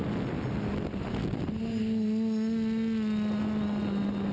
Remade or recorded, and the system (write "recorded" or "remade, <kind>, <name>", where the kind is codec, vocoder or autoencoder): recorded